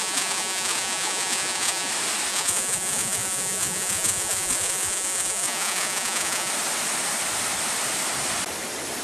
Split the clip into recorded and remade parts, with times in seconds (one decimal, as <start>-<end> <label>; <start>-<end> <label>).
0.0-1.9 remade; 1.9-2.3 recorded; 2.3-6.5 remade; 6.5-9.0 recorded